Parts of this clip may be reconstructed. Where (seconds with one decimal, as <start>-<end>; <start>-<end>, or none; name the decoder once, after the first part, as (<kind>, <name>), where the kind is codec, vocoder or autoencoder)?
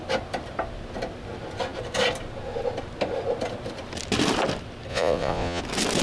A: 4.9-5.6 (vocoder, Vocos)